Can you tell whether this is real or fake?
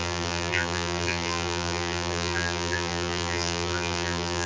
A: fake